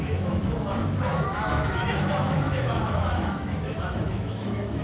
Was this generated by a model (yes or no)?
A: yes